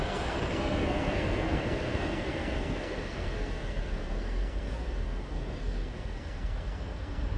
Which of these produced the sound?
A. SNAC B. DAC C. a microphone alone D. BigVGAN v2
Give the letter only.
A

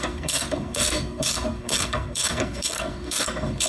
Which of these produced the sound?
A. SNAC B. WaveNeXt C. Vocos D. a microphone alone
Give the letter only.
A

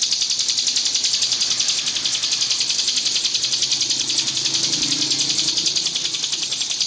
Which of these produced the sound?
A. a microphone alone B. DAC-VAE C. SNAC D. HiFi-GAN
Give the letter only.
A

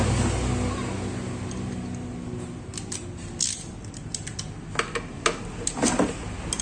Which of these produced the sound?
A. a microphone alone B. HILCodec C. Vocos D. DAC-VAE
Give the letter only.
A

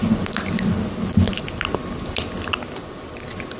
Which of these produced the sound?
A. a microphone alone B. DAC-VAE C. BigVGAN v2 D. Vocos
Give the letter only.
A